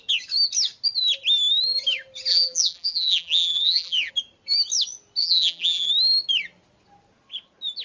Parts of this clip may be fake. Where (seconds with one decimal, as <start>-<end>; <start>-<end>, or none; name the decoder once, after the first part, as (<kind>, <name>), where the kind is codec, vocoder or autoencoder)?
2.3-4.1 (vocoder, BigVGAN v2); 5.2-5.9